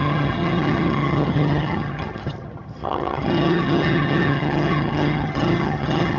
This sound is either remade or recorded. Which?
remade